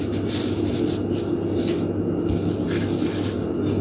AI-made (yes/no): no